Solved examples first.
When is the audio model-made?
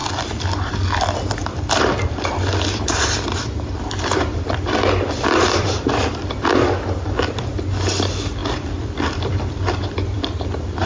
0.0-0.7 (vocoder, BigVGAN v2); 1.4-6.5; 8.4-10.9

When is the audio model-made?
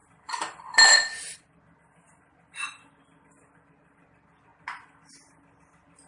0.0-1.4 (vocoder, BigVGAN v2); 4.5-5.1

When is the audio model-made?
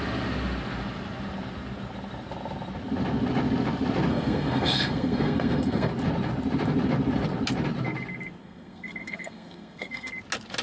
4.1-5.9 (codec, SNAC); 8.4-10.1